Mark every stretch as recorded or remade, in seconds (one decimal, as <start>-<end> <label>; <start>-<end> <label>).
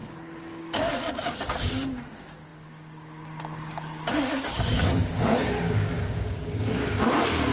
0.0-0.6 recorded; 0.6-7.5 remade